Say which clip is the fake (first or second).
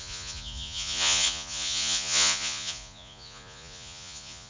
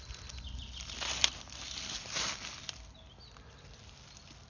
first